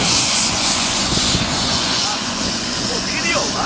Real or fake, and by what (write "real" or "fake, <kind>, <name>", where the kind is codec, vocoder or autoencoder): fake, vocoder, Vocos